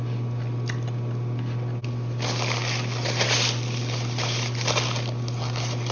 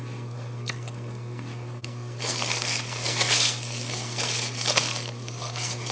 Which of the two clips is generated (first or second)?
second